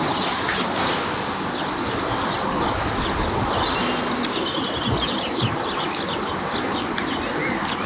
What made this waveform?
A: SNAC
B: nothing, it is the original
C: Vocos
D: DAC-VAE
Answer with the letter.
B